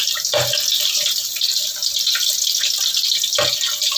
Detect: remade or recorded recorded